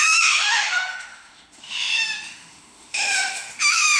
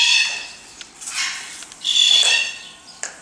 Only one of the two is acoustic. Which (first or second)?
second